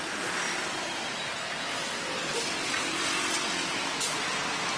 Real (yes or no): yes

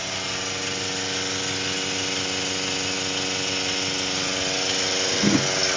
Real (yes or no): yes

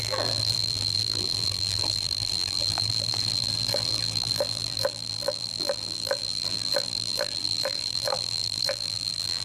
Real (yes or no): no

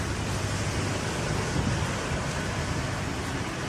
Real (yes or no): yes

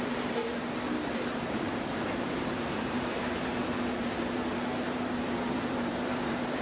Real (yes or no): no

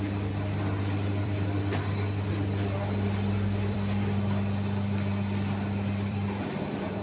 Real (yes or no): no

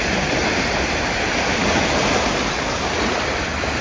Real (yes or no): no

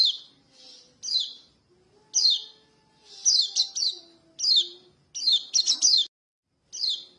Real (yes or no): yes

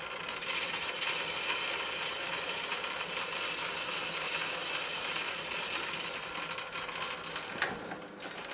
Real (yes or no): yes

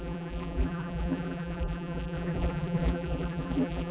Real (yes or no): no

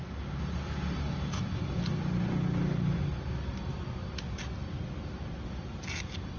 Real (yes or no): yes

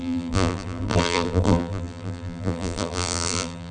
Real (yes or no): no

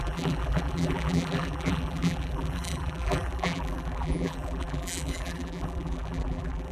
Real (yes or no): no